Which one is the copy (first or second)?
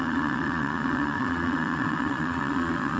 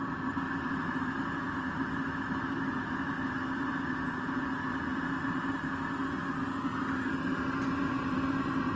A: first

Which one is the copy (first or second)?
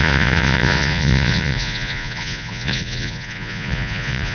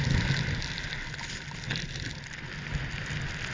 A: first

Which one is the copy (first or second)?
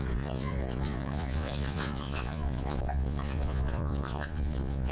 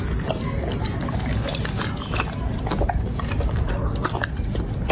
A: first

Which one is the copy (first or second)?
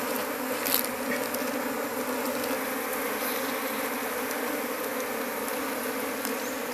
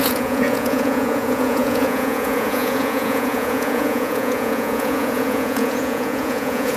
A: second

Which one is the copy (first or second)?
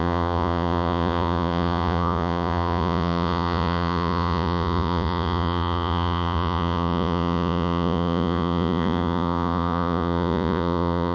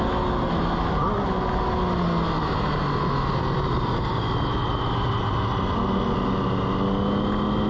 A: first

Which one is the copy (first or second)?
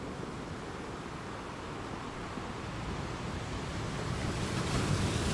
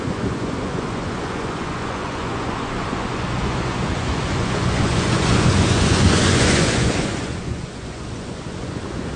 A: second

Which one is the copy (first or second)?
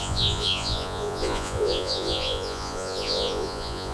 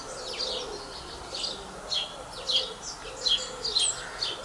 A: first